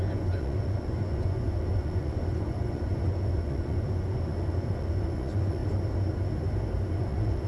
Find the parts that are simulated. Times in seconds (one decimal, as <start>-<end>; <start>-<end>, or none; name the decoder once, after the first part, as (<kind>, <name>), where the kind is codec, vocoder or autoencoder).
0.0-5.6 (vocoder, Vocos); 7.0-7.5